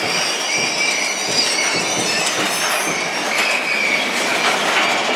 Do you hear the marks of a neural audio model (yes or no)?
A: no